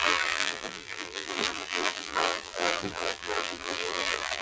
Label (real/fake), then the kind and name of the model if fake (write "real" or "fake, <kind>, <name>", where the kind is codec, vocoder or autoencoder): fake, vocoder, BigVGAN v2